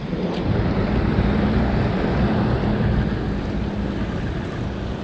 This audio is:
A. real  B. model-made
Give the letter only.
A